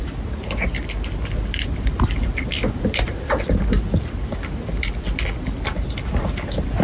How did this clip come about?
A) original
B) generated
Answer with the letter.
A